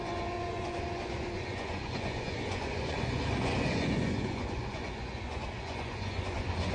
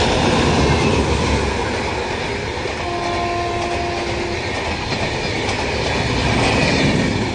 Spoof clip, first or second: first